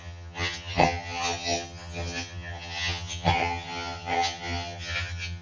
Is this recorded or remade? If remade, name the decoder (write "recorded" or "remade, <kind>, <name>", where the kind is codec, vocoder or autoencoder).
remade, vocoder, HiFi-GAN